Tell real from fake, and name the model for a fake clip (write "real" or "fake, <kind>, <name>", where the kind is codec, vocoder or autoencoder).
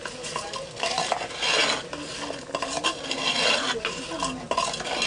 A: real